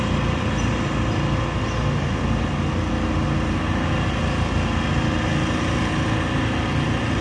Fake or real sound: real